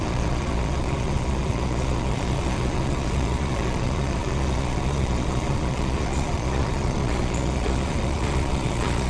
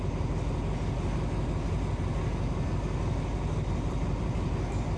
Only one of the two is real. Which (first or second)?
second